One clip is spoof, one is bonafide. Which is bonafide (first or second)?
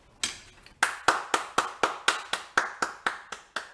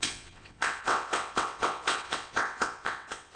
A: first